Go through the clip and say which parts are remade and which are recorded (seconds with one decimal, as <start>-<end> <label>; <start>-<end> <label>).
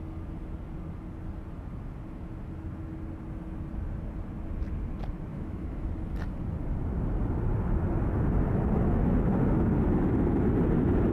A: 0.0-5.3 recorded; 5.3-5.9 remade; 5.9-11.1 recorded